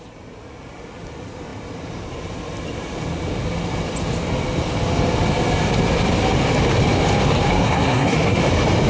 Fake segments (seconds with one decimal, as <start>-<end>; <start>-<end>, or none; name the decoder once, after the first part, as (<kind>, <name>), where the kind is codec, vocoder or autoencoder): 7.5-8.4 (codec, SNAC)